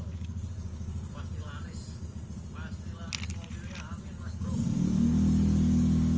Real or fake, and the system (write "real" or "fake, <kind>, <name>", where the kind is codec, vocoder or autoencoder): real